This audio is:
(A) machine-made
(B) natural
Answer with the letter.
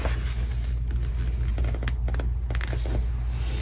B